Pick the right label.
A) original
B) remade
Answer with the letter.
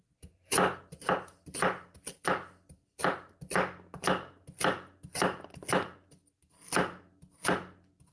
A